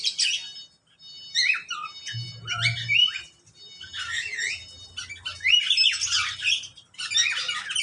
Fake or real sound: real